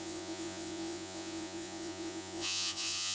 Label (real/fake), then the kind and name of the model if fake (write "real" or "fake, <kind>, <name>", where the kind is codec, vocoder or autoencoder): fake, vocoder, Vocos